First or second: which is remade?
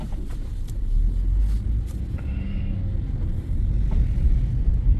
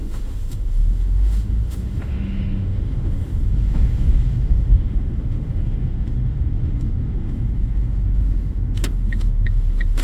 second